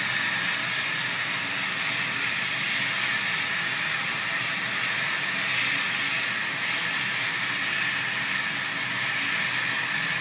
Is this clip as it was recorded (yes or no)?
yes